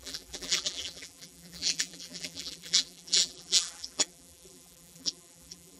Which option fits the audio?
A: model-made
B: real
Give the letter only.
A